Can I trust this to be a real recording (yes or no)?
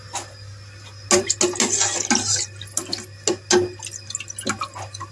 yes